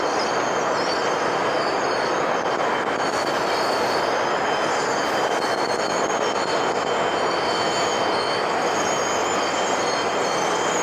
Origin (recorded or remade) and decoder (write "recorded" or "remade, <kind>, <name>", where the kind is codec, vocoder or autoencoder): recorded